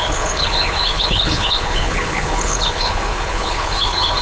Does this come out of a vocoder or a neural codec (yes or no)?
yes